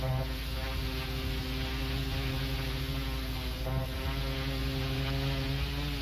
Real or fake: real